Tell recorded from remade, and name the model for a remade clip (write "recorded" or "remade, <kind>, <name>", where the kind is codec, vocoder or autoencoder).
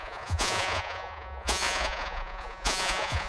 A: remade, vocoder, Vocos